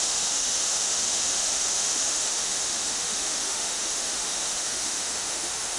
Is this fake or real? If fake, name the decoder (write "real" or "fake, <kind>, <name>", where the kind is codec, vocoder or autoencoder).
fake, autoencoder, DAC-VAE